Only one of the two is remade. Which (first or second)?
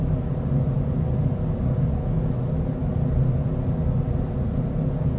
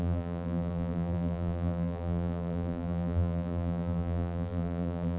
second